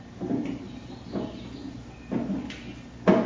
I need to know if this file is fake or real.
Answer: real